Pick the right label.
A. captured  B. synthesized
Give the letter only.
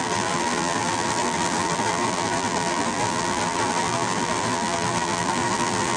B